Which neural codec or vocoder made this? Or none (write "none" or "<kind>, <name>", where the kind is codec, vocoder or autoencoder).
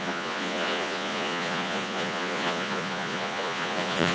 vocoder, Vocos